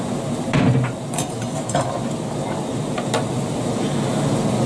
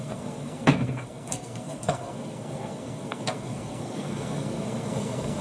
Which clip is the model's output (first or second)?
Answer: second